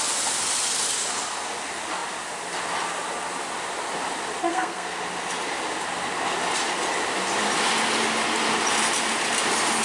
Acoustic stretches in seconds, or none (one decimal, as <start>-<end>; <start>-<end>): 0.0-4.5; 5.0-9.8